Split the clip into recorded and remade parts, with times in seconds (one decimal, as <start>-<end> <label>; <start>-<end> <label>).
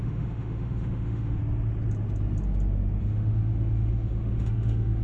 0.0-1.4 remade; 1.4-3.0 recorded; 3.0-5.0 remade